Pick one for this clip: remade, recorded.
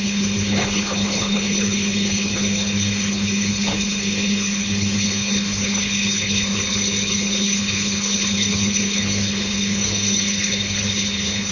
remade